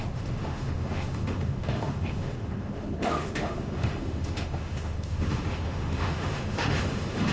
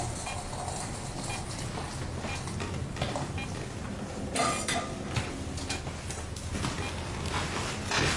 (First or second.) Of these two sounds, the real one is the second